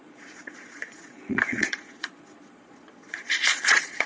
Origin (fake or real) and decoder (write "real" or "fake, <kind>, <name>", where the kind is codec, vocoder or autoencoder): fake, vocoder, Vocos